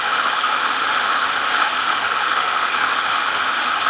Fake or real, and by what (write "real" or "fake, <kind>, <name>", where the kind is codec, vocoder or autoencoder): fake, autoencoder, DAC-VAE